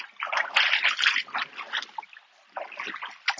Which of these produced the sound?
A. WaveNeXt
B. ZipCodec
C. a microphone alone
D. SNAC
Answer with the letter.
C